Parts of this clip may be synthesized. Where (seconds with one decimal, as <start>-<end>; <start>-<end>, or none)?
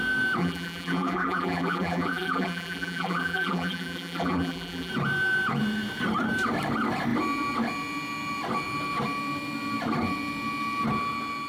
0.4-4.9